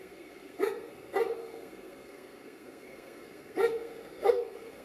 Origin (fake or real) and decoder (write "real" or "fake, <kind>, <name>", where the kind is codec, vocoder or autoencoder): fake, codec, SNAC